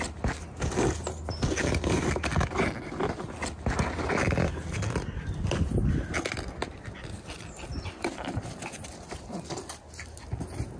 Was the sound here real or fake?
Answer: real